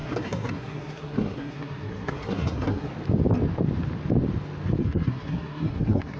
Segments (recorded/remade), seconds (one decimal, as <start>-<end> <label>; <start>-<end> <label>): 0.0-2.9 remade; 2.9-4.8 recorded; 4.8-6.2 remade